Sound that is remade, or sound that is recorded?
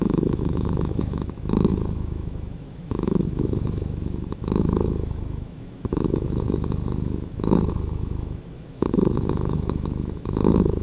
remade